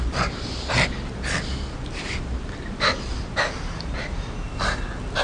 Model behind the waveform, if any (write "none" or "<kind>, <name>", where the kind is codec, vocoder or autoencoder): none